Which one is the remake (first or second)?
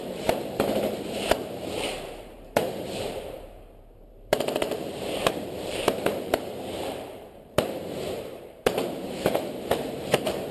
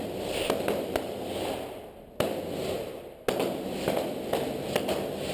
first